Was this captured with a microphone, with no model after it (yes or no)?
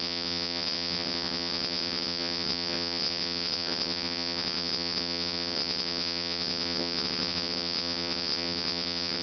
no